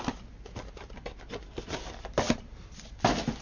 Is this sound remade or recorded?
recorded